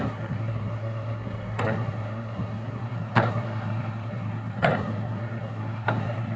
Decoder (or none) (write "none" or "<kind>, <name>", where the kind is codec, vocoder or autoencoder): codec, SNAC